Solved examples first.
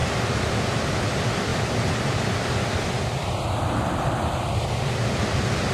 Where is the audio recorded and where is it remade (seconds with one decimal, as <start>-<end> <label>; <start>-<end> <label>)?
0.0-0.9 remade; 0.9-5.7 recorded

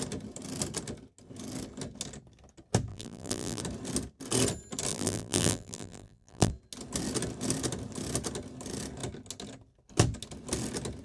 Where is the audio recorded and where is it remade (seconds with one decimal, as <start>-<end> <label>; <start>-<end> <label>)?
0.0-2.9 recorded; 2.9-3.6 remade; 3.6-4.9 recorded; 4.9-6.5 remade; 6.5-11.0 recorded

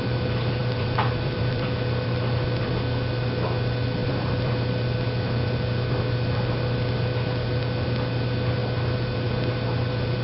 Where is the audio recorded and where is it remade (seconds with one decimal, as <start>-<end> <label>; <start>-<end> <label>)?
0.0-0.6 recorded; 0.6-2.7 remade; 2.7-4.0 recorded; 4.0-4.8 remade; 4.8-8.6 recorded; 8.6-9.3 remade; 9.3-10.2 recorded

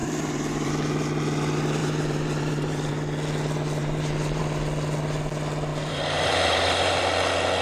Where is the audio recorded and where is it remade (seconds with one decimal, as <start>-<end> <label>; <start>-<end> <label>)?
0.0-0.7 remade; 0.7-1.8 recorded; 1.8-2.9 remade; 2.9-3.8 recorded; 3.8-4.4 remade; 4.4-5.7 recorded; 5.7-7.0 remade; 7.0-7.6 recorded

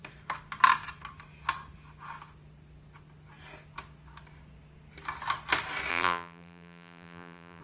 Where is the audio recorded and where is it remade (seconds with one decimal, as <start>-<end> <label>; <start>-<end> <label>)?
0.0-5.9 recorded; 5.9-7.6 remade

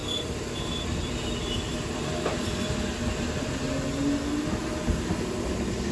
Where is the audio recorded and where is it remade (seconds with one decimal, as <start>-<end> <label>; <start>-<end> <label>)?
0.0-3.5 remade; 3.5-5.9 recorded